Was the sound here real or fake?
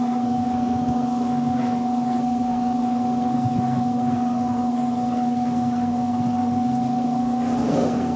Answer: fake